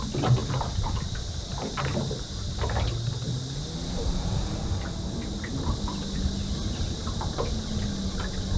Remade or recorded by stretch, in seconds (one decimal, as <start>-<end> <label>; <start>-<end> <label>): 0.0-8.6 recorded